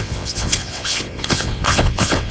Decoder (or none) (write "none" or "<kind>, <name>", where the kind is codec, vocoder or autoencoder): vocoder, WaveNeXt